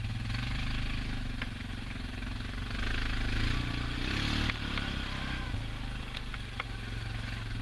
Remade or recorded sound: recorded